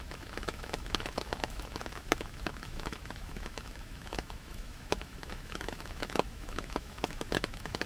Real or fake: fake